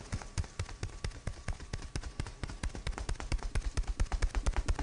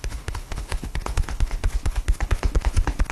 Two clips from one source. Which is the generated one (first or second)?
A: second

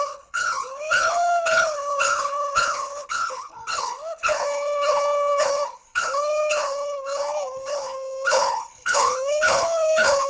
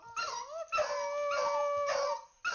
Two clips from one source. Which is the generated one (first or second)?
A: first